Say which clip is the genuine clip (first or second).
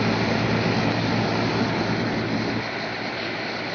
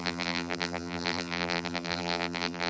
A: first